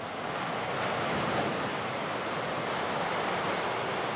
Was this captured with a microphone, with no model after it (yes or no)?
yes